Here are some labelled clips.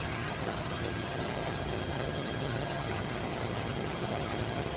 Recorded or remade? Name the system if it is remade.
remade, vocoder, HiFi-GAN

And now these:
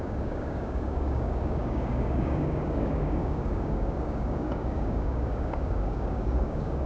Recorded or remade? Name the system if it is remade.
remade, codec, DAC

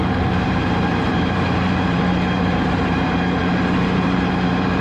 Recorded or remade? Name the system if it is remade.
remade, vocoder, BigVGAN v2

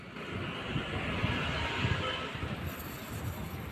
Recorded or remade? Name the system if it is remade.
recorded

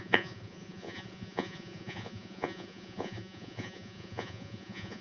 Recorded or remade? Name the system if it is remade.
remade, vocoder, Vocos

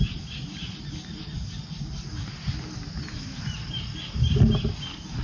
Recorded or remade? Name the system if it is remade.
recorded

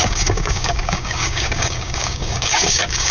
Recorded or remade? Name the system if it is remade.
remade, codec, DAC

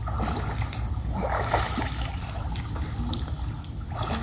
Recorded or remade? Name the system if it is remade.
recorded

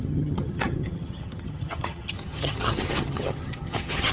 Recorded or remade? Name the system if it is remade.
remade, vocoder, HiFi-GAN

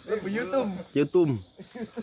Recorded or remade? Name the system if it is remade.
recorded